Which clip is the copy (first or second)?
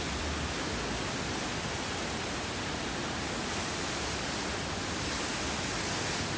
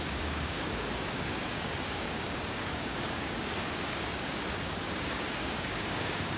second